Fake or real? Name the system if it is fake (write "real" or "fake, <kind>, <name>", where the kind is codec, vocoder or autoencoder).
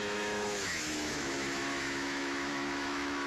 fake, autoencoder, DAC-VAE